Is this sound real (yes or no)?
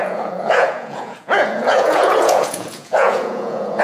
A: no